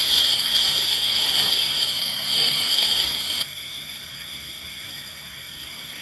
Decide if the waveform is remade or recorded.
remade